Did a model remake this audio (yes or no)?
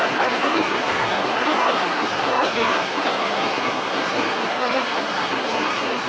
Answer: yes